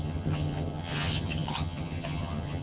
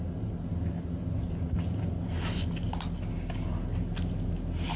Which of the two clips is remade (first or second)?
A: first